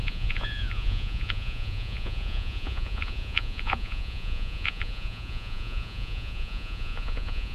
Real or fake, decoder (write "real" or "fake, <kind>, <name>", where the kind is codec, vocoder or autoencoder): fake, vocoder, Vocos